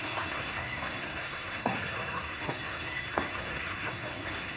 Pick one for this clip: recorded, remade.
remade